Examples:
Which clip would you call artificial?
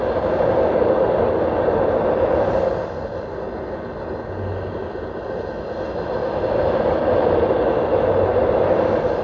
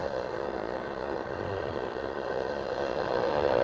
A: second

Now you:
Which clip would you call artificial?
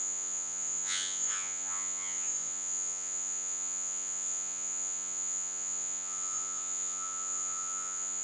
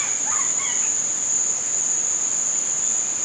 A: first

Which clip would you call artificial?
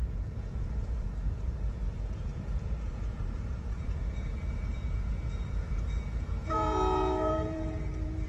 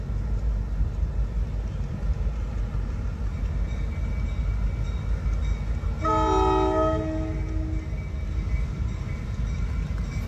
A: first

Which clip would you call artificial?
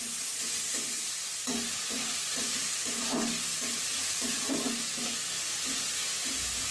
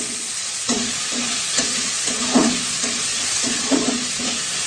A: second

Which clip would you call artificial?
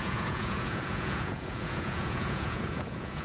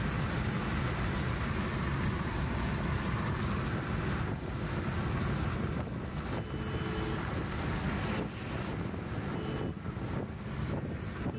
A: first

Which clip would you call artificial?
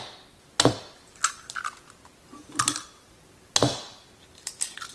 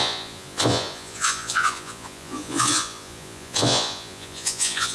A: second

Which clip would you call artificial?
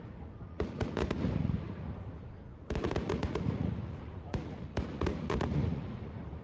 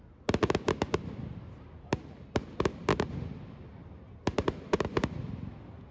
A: first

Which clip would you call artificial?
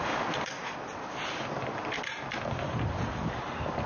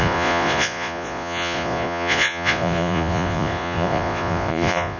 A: second